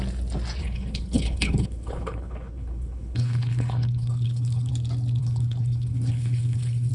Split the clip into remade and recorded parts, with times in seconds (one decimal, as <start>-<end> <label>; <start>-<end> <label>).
0.0-0.6 recorded; 0.6-4.7 remade; 4.7-5.2 recorded; 5.2-6.9 remade